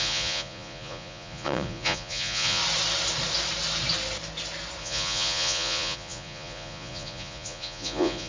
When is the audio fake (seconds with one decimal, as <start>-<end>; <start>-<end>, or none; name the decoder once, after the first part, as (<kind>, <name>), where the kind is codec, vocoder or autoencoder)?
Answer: 0.0-2.6 (vocoder, Vocos); 4.8-8.3